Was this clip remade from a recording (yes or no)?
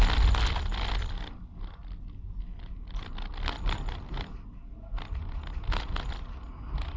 no